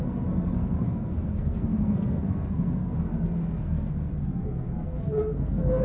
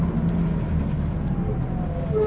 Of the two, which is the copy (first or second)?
first